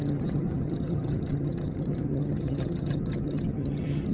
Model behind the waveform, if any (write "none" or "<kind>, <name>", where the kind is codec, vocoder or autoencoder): vocoder, HiFi-GAN